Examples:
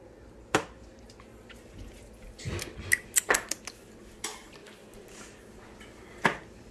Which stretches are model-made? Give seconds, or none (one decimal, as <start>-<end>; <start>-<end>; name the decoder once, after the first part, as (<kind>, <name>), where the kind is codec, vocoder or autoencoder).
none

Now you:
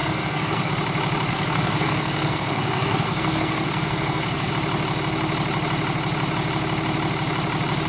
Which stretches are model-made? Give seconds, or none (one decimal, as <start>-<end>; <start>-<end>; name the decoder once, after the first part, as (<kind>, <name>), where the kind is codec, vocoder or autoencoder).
0.0-0.7 (codec, SNAC); 1.3-4.5

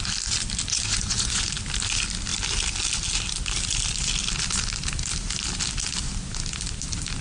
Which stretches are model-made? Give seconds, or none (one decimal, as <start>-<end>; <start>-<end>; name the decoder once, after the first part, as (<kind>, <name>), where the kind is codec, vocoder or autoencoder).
0.7-1.5 (vocoder, Vocos)